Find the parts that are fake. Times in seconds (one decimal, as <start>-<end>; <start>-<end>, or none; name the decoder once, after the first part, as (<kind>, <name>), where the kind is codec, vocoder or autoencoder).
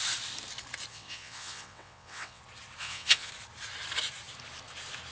0.9-2.4 (vocoder, WaveNeXt); 2.8-3.3